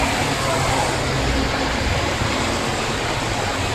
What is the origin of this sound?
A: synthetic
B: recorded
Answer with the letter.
B